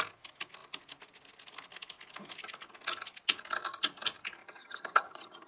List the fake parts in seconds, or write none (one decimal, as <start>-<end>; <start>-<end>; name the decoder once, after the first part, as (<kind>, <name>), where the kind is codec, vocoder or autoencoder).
4.4-5.5 (vocoder, HiFi-GAN)